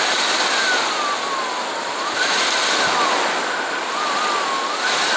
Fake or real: real